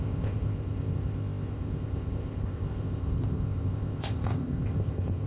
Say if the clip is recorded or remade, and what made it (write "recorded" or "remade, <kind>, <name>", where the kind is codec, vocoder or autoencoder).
remade, codec, ZipCodec